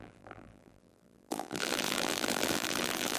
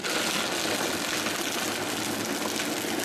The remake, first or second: first